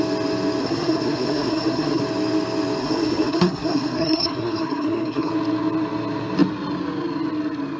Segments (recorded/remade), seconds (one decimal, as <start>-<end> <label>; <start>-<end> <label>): 0.0-0.6 recorded; 0.6-2.0 remade; 2.0-2.8 recorded; 2.8-5.3 remade; 5.3-7.8 recorded